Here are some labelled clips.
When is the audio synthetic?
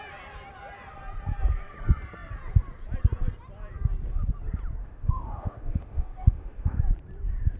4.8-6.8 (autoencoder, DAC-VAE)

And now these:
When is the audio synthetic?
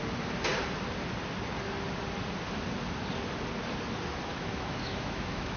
4.3-5.6 (autoencoder, DAC-VAE)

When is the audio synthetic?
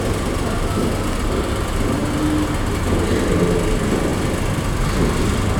none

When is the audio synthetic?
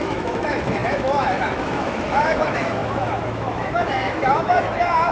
0.0-5.1 (autoencoder, DAC-VAE)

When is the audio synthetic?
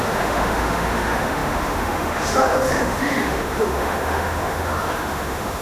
0.0-5.6 (autoencoder, DAC-VAE)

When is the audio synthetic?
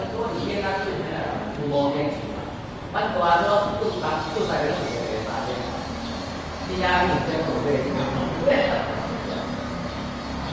0.9-2.0 (autoencoder, DAC-VAE)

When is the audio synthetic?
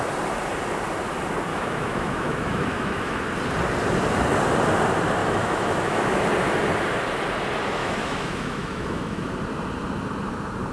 1.5-3.3 (autoencoder, DAC-VAE); 5.2-6.2; 7.8-9.3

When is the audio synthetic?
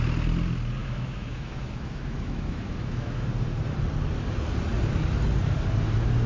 0.8-3.2 (autoencoder, DAC-VAE)